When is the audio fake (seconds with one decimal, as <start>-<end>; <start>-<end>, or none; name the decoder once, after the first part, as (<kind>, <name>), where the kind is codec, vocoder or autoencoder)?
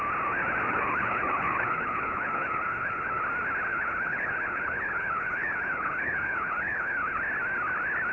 0.7-3.2 (codec, HILCodec); 3.7-7.2